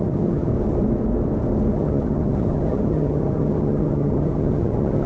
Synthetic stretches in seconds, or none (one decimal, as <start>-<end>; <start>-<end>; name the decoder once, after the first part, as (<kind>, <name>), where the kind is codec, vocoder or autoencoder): 0.0-0.5 (vocoder, HiFi-GAN); 1.7-5.1